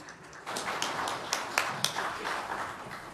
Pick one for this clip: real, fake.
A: real